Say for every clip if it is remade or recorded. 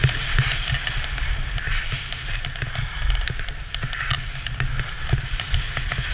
recorded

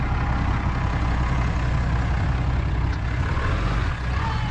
remade